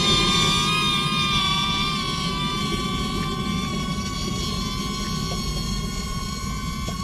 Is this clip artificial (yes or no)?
no